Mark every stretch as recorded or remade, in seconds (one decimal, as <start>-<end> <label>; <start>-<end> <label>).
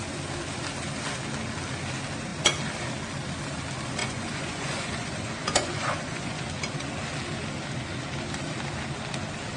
0.0-4.0 recorded; 4.0-6.4 remade; 6.4-9.6 recorded